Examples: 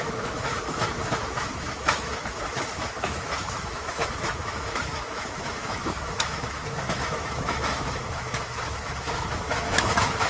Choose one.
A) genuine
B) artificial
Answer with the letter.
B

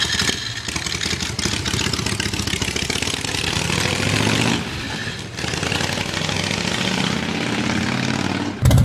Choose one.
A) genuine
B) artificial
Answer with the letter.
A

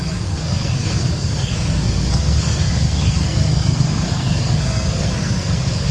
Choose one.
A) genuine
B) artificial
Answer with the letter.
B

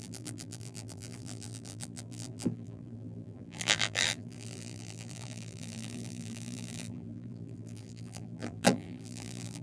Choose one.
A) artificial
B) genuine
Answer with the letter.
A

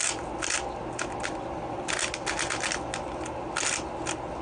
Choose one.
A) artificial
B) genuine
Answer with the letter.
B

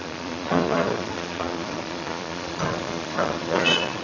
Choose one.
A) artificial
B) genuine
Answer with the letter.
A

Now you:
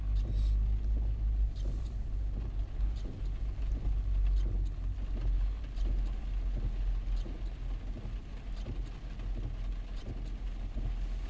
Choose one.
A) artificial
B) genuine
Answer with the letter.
B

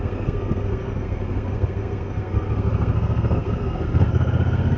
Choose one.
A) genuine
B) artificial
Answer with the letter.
B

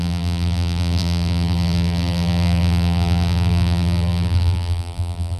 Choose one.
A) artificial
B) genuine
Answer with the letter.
A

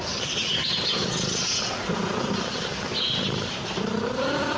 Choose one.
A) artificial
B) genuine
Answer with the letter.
B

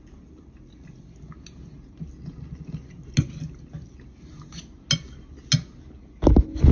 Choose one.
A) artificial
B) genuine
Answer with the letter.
B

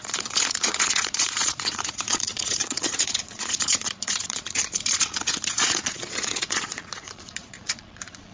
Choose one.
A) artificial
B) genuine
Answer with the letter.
A